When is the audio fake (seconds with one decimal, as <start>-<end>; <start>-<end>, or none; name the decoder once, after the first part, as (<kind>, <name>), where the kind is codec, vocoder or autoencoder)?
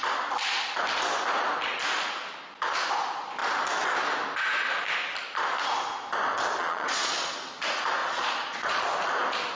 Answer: 6.6-7.3 (vocoder, Vocos); 8.0-8.8